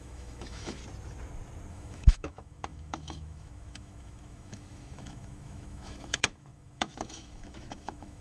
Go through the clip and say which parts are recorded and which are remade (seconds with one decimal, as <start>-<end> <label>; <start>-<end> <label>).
0.0-0.8 remade; 0.8-1.7 recorded; 1.7-8.2 remade